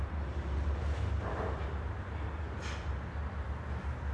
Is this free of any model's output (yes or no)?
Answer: yes